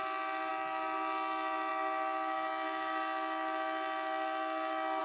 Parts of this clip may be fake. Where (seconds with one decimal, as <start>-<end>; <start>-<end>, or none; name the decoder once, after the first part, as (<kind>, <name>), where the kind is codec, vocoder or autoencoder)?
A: none